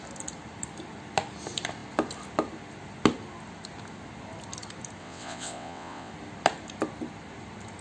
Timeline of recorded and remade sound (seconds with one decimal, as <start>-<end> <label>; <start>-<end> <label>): 0.0-5.0 recorded; 5.0-6.1 remade; 6.1-7.8 recorded